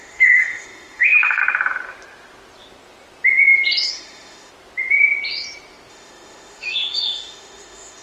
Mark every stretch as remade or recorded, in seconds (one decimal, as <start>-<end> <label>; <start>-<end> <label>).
0.0-1.4 remade; 1.4-3.9 recorded; 3.9-4.5 remade; 4.5-5.9 recorded; 5.9-8.0 remade